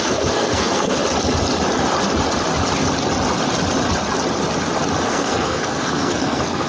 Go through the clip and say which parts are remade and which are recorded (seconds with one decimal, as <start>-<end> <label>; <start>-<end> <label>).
0.0-1.0 remade; 1.0-5.0 recorded; 5.0-6.7 remade